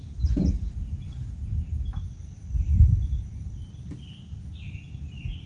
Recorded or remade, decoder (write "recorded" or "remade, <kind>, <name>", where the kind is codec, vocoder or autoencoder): recorded